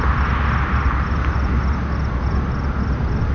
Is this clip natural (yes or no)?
yes